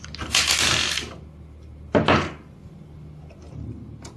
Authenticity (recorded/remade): recorded